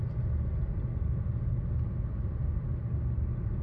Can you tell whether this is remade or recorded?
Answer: recorded